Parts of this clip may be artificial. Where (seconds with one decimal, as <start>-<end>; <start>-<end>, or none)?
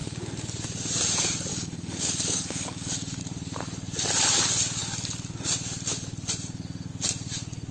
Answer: 1.5-3.2